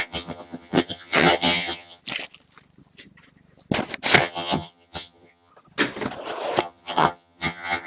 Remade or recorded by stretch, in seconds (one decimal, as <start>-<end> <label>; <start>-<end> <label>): 0.0-2.0 remade; 2.0-4.2 recorded; 4.2-5.5 remade; 5.5-6.6 recorded; 6.6-7.9 remade